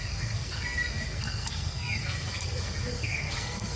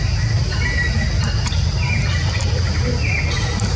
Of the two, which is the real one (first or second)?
second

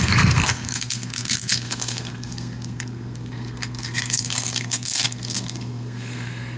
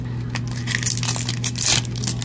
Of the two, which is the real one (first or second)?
second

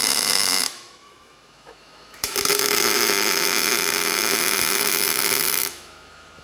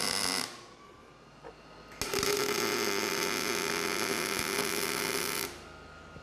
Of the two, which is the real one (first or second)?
second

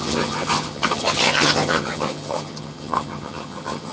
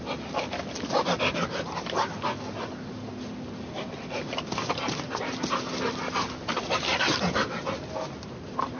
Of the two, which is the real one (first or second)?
second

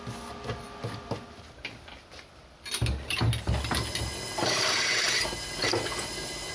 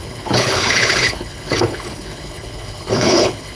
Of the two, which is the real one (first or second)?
first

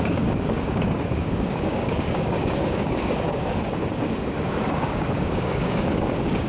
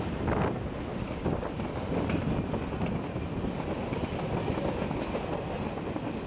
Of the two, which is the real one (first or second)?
second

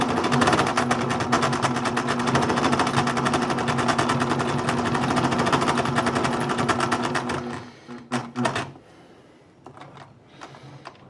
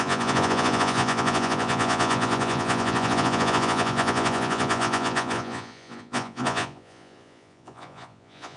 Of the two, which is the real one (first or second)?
first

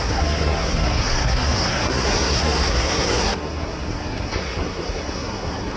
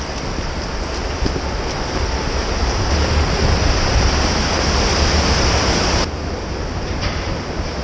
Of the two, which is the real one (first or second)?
second